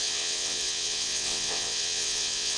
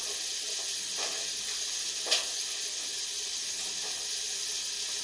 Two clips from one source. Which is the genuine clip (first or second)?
second